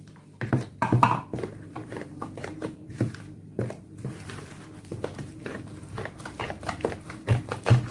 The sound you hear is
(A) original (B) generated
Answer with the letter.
B